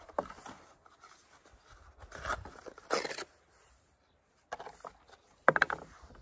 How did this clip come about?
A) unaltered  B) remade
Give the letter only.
A